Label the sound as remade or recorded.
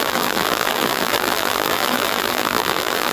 remade